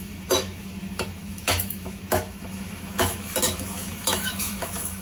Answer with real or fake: fake